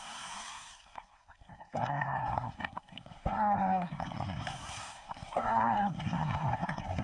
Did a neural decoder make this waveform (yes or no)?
yes